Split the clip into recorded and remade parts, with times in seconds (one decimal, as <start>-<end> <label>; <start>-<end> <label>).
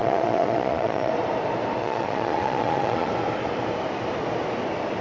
0.0-1.1 remade; 1.1-1.8 recorded; 1.8-3.1 remade; 3.1-5.0 recorded